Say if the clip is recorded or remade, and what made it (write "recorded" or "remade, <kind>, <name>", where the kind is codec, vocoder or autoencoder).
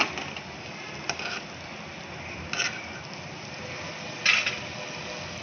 recorded